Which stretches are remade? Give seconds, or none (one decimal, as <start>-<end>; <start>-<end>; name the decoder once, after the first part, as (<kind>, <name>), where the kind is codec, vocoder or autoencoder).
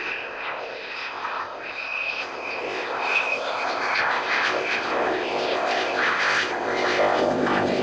0.0-7.8 (codec, ZipCodec)